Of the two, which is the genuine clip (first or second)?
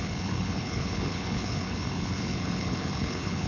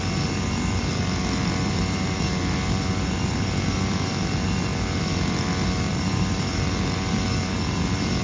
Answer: second